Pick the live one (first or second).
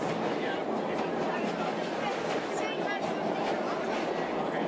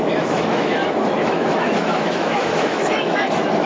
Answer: first